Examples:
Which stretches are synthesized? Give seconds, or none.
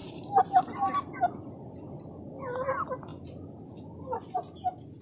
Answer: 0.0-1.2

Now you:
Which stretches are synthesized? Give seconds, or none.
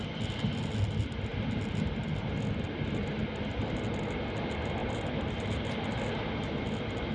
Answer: 1.3-2.3; 4.8-5.7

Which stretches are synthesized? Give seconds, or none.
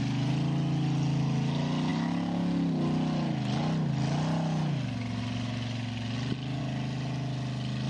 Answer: none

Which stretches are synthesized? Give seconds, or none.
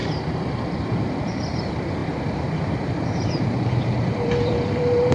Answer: 0.0-5.1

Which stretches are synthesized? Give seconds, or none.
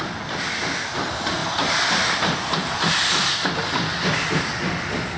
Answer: 1.4-4.3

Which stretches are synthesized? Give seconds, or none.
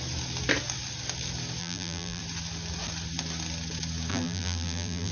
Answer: 1.6-2.2; 4.1-5.1